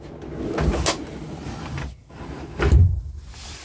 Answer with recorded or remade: recorded